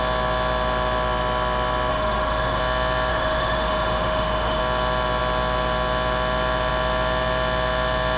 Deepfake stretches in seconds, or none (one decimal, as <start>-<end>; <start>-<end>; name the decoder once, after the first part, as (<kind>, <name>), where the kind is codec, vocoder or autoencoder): 1.9-2.6 (autoencoder, DAC-VAE); 3.1-4.6